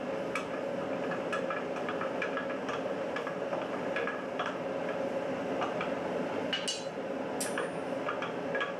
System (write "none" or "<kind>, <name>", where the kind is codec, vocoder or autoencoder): none